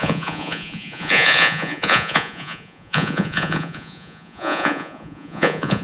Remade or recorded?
remade